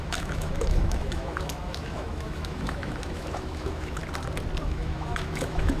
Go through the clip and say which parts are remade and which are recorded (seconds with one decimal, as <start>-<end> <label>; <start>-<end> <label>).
0.0-4.0 remade; 4.0-4.6 recorded; 4.6-5.8 remade